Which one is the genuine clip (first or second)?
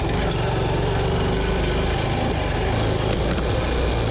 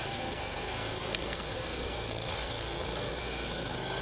first